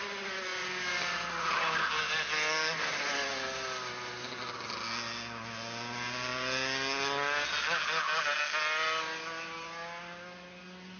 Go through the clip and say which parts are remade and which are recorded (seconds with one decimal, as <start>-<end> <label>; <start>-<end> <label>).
0.0-11.0 recorded